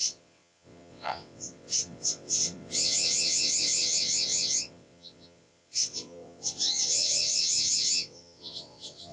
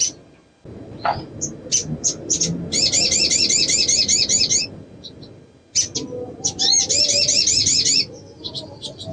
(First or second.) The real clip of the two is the second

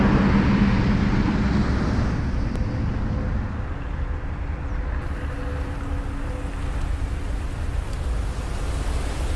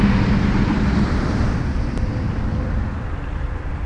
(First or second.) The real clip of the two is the first